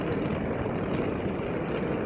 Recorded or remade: recorded